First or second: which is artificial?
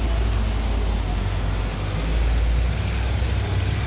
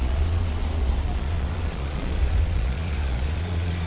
second